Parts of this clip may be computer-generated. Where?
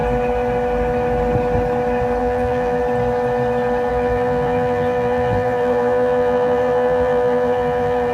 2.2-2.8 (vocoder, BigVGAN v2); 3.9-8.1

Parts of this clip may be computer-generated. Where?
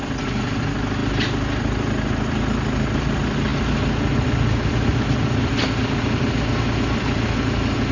none